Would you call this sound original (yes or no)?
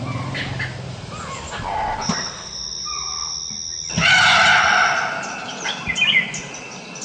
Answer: yes